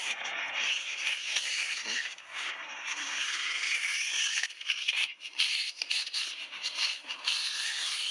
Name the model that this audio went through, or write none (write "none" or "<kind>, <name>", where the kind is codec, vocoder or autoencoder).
codec, SNAC